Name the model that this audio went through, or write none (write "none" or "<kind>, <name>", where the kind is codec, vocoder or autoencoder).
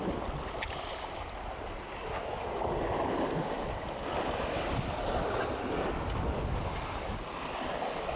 none